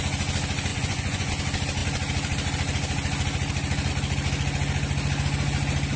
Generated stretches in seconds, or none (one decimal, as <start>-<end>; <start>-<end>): 0.7-1.3